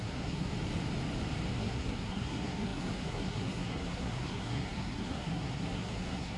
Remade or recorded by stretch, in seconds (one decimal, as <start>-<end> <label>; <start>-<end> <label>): 0.0-0.5 remade; 0.5-1.6 recorded; 1.6-6.4 remade